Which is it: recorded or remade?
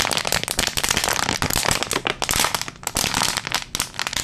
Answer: recorded